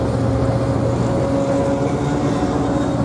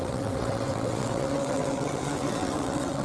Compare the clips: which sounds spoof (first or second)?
second